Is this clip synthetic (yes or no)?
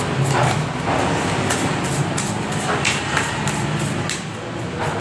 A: no